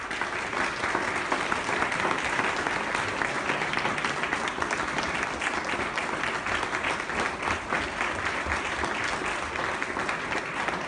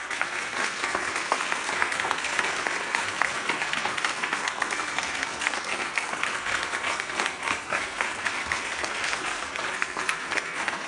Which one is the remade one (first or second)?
second